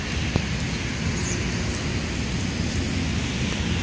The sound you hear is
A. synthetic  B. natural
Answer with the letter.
B